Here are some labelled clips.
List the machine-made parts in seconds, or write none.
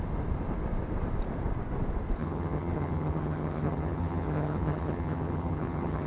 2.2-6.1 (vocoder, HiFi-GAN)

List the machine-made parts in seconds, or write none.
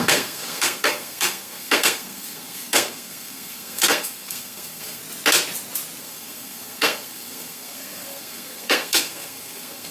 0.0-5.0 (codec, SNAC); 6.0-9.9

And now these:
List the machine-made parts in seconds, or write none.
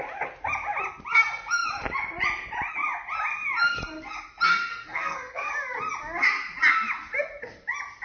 4.7-5.5 (codec, SNAC)